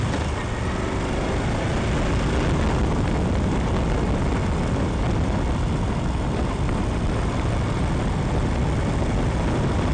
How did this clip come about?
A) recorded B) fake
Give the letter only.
A